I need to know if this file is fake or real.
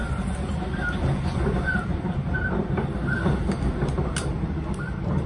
real